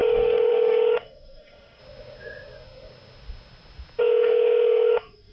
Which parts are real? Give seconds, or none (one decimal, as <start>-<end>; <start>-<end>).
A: 1.8-4.0